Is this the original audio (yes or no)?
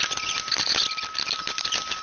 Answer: yes